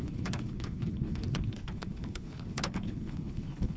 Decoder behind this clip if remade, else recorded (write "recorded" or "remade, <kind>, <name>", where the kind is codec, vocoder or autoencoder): remade, codec, HILCodec